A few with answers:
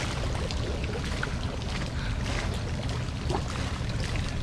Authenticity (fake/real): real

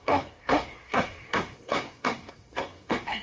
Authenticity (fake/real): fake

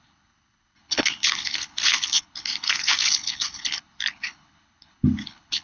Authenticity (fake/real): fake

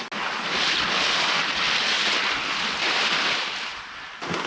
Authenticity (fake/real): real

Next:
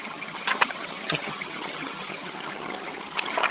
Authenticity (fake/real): fake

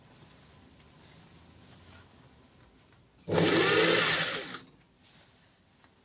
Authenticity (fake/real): real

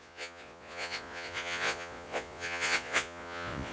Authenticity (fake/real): fake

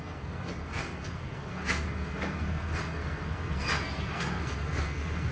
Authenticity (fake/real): fake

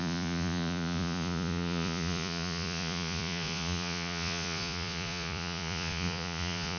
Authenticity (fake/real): fake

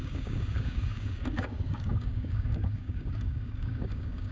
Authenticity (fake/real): fake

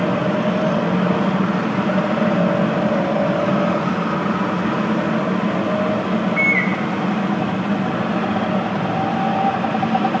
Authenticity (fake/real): real